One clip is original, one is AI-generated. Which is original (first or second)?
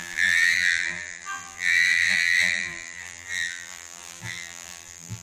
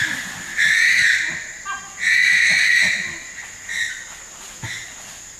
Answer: second